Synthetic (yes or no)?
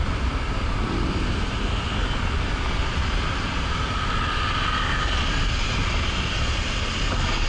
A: no